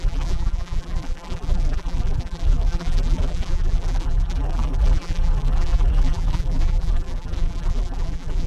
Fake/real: fake